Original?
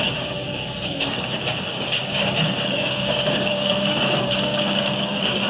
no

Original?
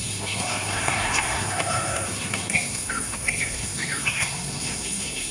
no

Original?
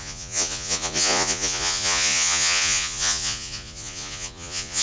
no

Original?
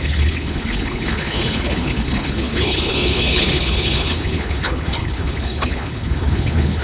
no